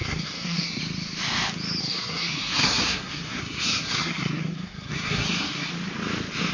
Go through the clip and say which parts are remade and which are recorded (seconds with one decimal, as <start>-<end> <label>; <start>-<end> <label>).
0.0-0.8 remade; 0.8-1.8 recorded; 1.8-5.7 remade; 5.7-6.5 recorded

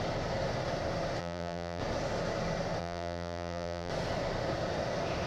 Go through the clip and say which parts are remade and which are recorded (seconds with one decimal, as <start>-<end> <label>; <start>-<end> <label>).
0.0-1.2 recorded; 1.2-1.8 remade; 1.8-2.8 recorded; 2.8-3.9 remade; 3.9-5.3 recorded